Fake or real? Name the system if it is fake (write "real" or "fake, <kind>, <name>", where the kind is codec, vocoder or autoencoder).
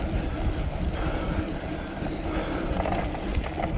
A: real